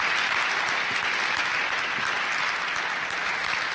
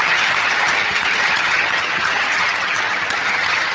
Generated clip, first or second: second